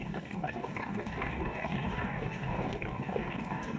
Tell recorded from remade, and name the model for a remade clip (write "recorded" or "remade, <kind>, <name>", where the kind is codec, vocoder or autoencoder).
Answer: remade, codec, DAC